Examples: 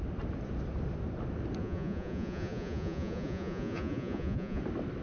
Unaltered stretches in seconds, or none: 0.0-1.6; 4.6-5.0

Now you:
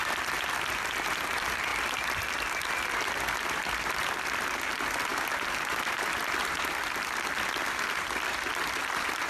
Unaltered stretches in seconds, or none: 0.0-9.3

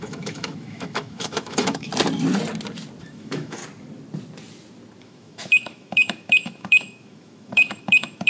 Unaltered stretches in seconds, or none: 1.9-3.0; 3.6-5.0